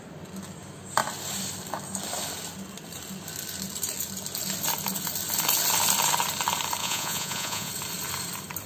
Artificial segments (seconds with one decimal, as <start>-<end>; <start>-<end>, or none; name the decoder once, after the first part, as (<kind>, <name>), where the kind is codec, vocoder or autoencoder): 6.8-7.7 (vocoder, Vocos)